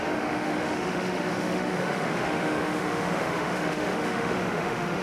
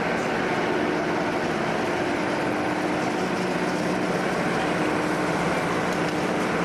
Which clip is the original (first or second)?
second